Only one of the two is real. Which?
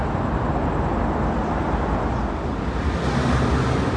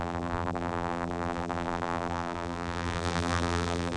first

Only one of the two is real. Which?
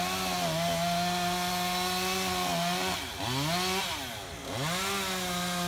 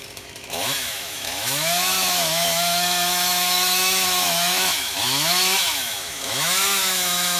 first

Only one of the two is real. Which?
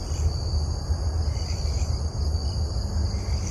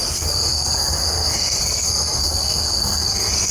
first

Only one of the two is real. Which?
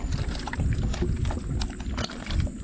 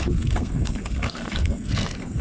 first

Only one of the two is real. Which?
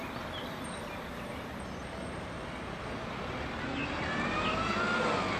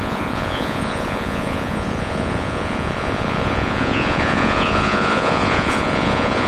first